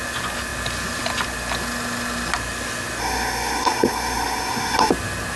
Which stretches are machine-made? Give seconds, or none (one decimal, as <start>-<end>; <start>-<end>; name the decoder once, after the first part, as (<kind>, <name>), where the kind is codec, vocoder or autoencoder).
3.0-4.9 (codec, SNAC)